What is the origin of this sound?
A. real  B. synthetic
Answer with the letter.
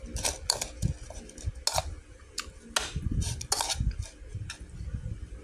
A